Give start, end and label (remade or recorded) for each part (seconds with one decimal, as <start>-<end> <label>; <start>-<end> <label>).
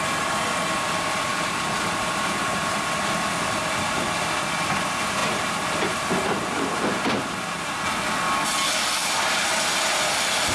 0.0-10.5 recorded